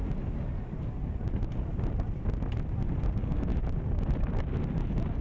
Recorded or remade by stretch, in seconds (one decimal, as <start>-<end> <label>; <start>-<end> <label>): 0.0-3.1 recorded; 3.1-3.5 remade; 3.5-5.2 recorded

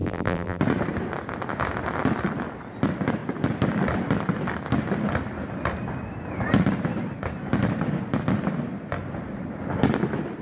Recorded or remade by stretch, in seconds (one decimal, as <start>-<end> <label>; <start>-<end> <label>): 0.0-0.6 remade; 0.6-10.4 recorded

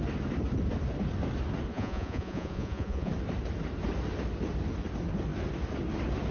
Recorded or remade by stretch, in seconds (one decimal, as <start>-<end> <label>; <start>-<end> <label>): 0.0-1.7 recorded; 1.7-3.1 remade; 3.1-6.3 recorded